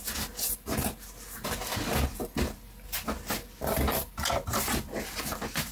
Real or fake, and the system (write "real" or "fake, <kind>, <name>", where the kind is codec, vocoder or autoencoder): real